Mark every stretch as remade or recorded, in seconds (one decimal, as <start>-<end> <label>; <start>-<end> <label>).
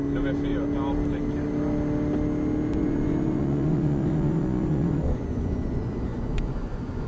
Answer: 0.0-2.7 recorded; 2.7-7.1 remade